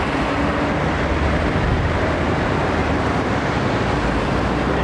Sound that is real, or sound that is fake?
fake